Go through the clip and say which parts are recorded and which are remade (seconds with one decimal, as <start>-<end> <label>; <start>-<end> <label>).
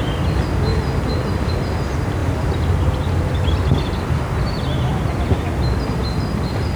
0.0-2.2 recorded; 2.2-2.8 remade; 2.8-6.8 recorded